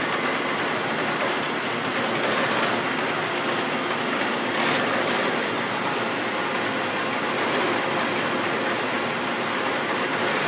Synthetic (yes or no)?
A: no